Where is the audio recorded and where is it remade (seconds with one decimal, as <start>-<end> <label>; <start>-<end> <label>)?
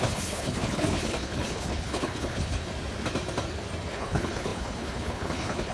0.0-2.7 remade; 2.7-3.9 recorded; 3.9-5.7 remade